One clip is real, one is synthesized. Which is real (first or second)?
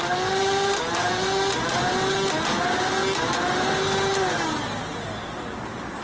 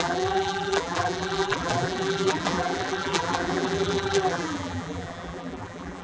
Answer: first